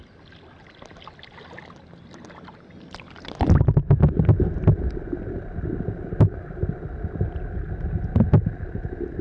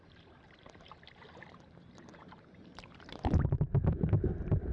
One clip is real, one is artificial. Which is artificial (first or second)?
second